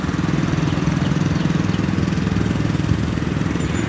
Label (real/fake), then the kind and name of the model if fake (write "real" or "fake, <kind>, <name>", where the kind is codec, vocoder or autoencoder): real